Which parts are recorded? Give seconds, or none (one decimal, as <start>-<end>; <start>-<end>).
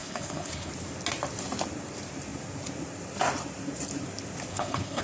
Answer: 0.7-4.5